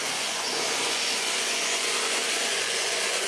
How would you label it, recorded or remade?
remade